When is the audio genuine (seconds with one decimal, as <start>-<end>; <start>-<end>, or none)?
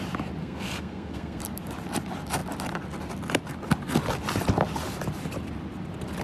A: 0.0-0.4; 1.4-6.2